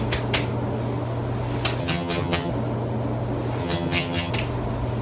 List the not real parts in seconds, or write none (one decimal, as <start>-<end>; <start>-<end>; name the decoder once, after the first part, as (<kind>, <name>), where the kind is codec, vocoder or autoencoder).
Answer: 1.8-2.5 (vocoder, HiFi-GAN); 3.6-4.3